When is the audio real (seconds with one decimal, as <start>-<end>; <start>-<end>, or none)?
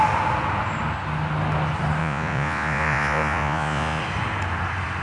0.0-2.0; 4.0-5.0